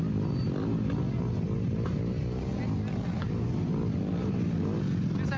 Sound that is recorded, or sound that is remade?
recorded